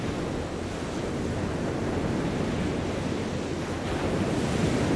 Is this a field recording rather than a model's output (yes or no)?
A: yes